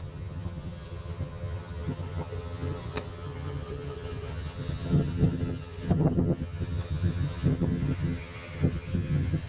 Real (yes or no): no